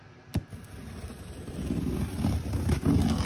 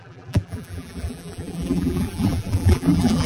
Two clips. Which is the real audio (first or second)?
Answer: first